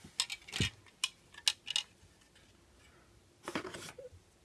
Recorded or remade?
recorded